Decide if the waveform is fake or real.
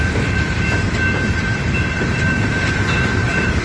fake